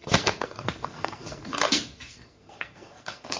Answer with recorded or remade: remade